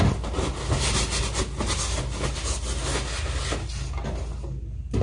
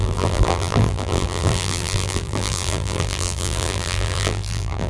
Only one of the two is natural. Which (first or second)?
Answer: first